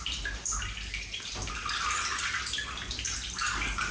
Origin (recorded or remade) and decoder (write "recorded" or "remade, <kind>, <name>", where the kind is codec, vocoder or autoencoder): recorded